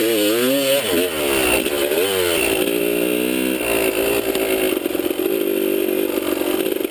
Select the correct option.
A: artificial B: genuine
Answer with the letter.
B